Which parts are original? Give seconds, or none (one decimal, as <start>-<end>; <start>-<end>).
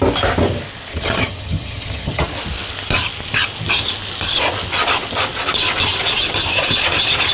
0.0-0.9; 2.3-7.3